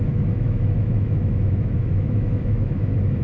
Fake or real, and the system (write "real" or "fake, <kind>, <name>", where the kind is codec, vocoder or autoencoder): fake, autoencoder, DAC-VAE